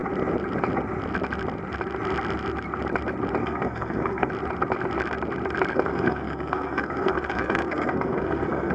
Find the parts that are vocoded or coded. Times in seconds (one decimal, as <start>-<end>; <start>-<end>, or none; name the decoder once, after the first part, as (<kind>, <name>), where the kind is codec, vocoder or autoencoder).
3.4-4.3 (codec, SNAC); 5.7-8.7